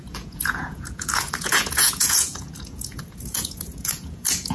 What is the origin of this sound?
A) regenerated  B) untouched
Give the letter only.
A